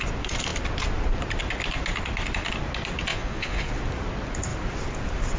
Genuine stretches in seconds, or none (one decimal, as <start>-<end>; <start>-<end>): 0.0-3.1; 3.7-5.4